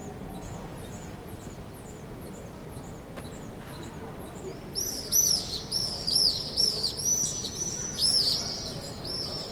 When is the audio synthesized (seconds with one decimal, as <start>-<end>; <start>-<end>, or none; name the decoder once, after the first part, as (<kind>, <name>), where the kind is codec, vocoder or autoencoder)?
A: 0.7-2.6 (vocoder, BigVGAN v2); 7.6-8.0; 8.9-9.5